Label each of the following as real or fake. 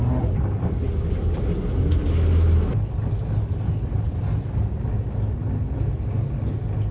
real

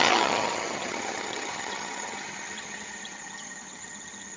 fake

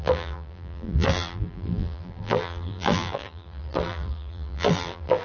fake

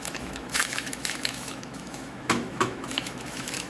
fake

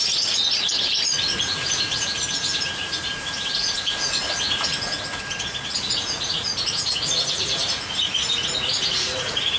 fake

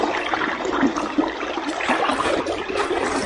fake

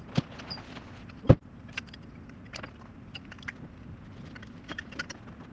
real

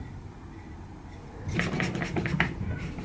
real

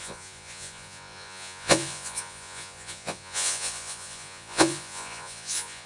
fake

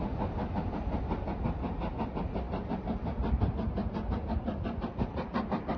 real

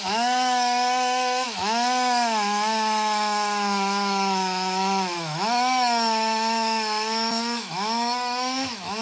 fake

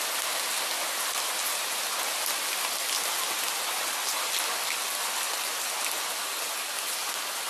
real